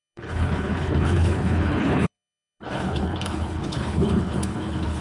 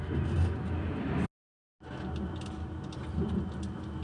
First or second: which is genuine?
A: second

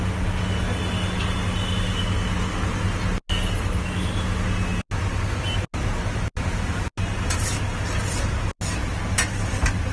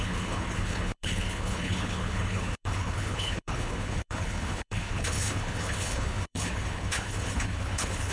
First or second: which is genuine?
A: first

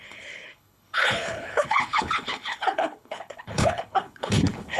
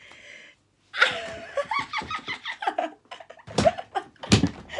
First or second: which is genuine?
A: second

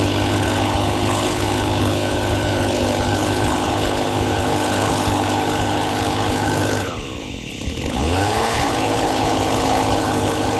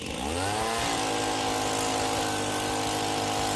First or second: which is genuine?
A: second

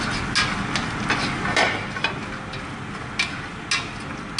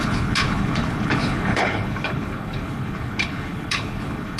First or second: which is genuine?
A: first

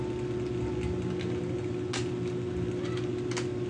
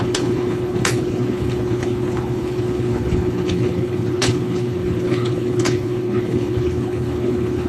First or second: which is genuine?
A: first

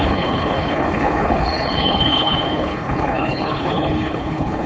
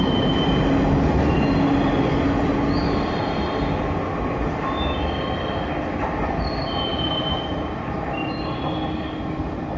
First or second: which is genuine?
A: second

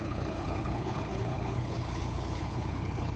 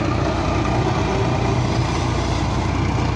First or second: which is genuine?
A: second